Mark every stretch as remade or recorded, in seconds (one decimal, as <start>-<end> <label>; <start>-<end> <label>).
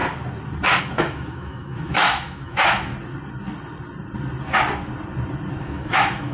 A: 0.0-0.8 recorded; 0.8-2.9 remade; 2.9-5.6 recorded; 5.6-6.3 remade